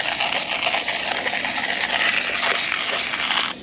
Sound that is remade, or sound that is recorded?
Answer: recorded